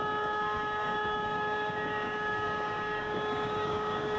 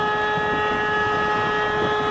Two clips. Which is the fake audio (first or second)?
first